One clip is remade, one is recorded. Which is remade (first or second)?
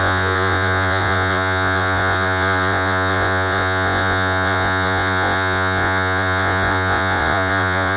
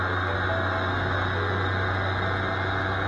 first